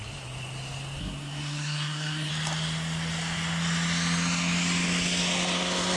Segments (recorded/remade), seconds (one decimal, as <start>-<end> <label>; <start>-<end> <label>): 0.0-1.0 recorded; 1.0-2.3 remade; 2.3-6.0 recorded